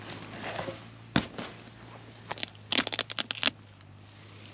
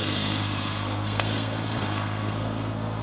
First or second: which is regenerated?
second